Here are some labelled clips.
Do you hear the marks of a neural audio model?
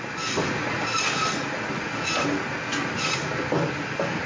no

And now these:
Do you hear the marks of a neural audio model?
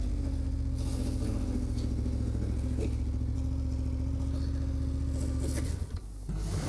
no